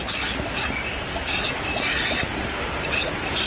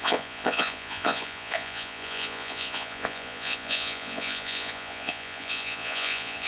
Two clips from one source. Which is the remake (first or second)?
second